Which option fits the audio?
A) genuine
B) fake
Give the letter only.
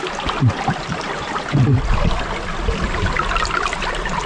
A